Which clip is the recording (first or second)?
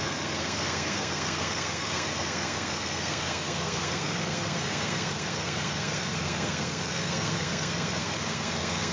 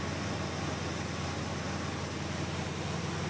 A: second